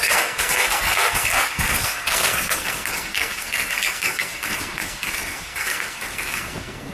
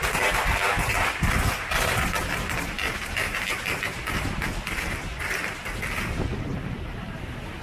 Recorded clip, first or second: second